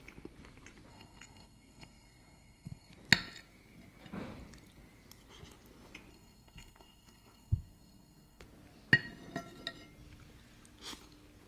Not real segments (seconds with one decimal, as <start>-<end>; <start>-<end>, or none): 0.9-2.9; 6.1-8.4